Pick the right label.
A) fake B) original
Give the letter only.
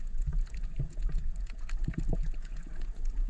A